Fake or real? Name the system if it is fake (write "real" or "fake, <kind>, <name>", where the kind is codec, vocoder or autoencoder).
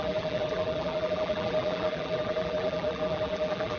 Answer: fake, vocoder, BigVGAN v2